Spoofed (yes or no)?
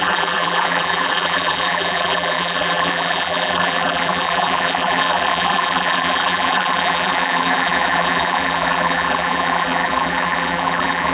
yes